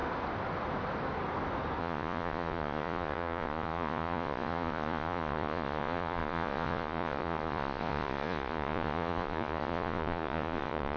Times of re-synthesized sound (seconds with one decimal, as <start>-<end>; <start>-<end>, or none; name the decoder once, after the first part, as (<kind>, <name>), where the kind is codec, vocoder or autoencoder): 1.8-11.0 (vocoder, Vocos)